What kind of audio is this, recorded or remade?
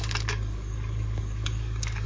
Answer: remade